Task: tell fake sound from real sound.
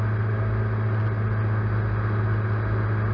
real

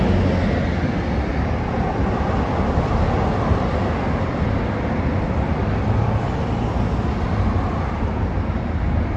real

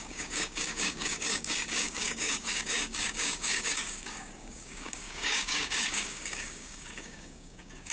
fake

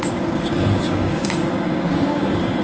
fake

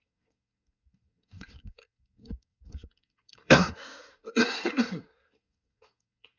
fake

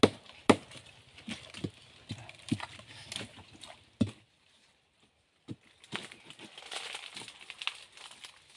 real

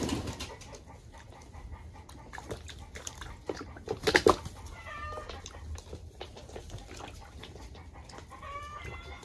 real